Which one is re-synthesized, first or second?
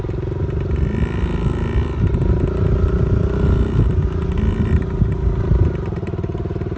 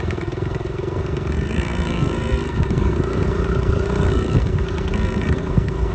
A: second